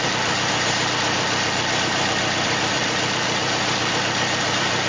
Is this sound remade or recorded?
remade